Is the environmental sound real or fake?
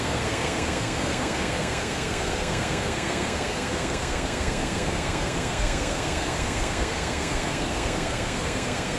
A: fake